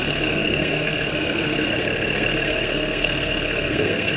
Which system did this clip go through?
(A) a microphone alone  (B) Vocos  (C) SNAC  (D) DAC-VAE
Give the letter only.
C